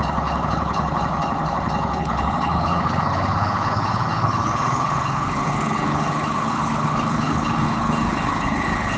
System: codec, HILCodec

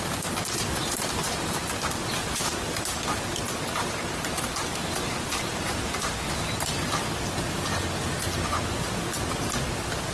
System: none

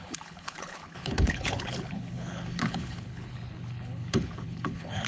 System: codec, HILCodec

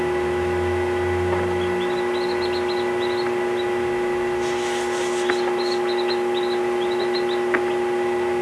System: none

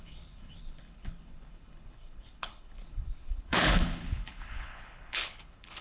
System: codec, HILCodec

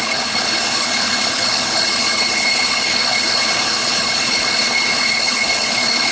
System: codec, HILCodec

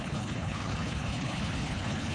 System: codec, HILCodec